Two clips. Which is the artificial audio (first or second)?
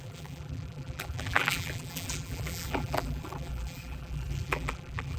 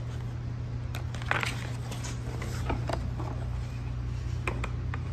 first